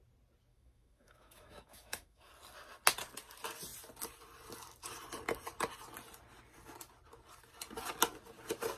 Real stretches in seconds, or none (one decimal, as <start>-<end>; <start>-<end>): 0.0-0.5; 2.3-8.8